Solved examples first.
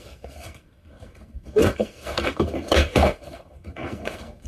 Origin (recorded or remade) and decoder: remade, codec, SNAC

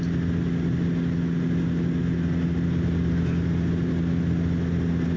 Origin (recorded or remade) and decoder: recorded